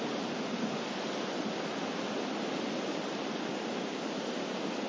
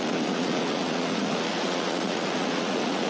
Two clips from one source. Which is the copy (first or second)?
second